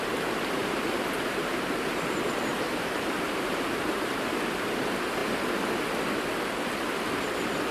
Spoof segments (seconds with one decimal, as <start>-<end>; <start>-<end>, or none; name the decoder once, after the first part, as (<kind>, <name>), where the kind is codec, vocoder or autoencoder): 0.6-1.9 (vocoder, BigVGAN v2); 2.5-4.2